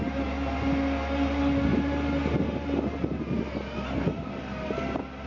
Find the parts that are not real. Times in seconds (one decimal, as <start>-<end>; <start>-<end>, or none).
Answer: none